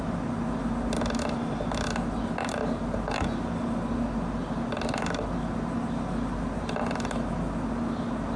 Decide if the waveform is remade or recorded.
recorded